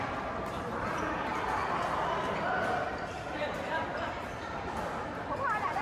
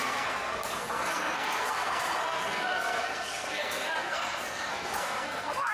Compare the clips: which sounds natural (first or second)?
first